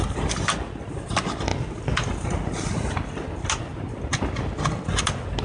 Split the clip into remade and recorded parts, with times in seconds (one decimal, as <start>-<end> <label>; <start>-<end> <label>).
0.0-5.4 recorded